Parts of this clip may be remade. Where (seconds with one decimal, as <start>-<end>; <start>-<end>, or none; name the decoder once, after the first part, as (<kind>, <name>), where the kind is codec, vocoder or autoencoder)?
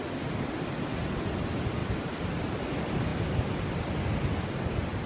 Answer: none